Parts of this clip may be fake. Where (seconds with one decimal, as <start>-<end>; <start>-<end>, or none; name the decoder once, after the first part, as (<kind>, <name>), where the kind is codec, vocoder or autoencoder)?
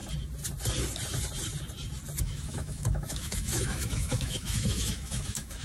2.2-5.6 (autoencoder, DAC-VAE)